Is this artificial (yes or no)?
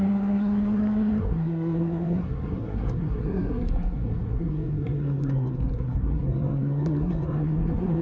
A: yes